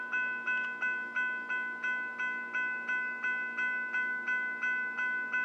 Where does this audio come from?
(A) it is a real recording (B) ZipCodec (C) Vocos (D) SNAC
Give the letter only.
A